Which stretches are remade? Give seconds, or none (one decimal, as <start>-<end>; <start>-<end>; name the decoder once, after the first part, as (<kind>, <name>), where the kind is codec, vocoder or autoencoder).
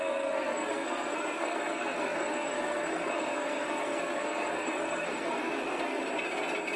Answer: 0.0-6.0 (codec, SNAC)